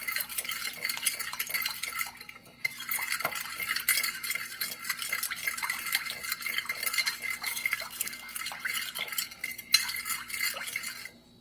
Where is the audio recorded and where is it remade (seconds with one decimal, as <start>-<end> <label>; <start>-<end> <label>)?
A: 0.0-7.5 recorded; 7.5-8.4 remade; 8.4-11.4 recorded